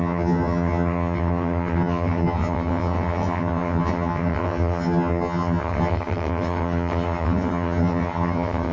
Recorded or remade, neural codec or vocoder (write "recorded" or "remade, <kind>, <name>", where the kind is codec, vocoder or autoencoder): remade, vocoder, HiFi-GAN